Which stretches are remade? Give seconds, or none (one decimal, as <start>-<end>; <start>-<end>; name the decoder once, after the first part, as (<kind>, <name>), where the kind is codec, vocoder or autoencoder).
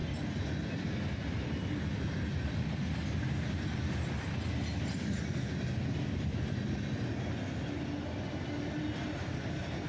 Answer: none